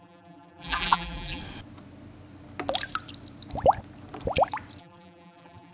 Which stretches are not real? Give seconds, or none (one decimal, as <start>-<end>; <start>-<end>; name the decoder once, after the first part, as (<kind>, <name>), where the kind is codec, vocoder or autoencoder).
0.0-1.4 (vocoder, BigVGAN v2); 4.8-5.7